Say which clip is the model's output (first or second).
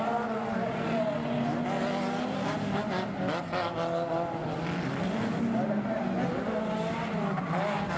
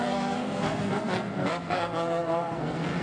second